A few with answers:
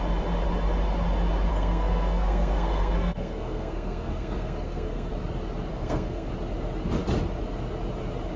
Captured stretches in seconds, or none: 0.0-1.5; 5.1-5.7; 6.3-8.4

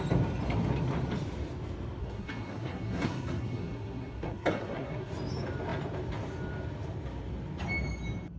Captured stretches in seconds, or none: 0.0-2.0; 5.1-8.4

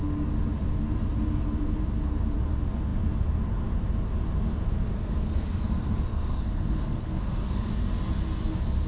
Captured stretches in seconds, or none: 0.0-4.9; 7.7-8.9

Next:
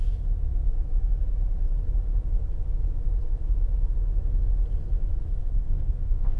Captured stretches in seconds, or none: 0.0-5.4

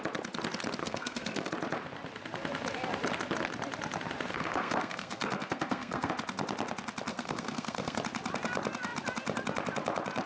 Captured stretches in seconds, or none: 0.0-0.8; 1.5-4.3; 6.1-7.1; 8.0-10.3